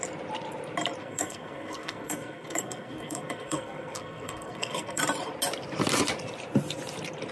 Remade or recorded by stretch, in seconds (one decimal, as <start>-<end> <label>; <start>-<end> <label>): 0.0-1.0 recorded; 1.0-5.0 remade; 5.0-7.3 recorded